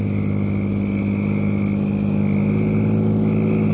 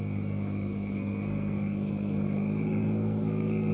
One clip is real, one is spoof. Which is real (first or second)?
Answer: first